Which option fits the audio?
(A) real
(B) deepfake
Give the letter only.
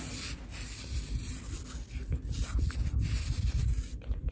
A